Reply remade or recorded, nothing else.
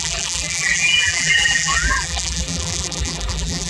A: remade